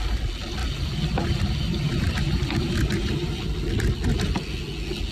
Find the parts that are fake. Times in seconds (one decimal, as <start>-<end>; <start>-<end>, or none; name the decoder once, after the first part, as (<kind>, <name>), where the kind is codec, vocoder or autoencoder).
0.6-3.7 (vocoder, BigVGAN v2)